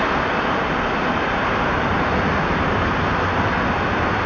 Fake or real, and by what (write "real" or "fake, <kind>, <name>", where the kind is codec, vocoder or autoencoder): real